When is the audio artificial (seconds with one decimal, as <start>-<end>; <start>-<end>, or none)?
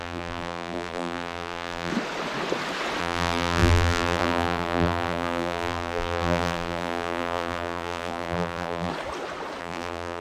0.0-1.9; 3.0-8.9; 9.6-10.2